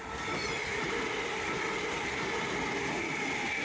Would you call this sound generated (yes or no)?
no